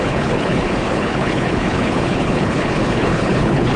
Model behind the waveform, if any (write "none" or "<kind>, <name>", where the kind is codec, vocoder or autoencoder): codec, HILCodec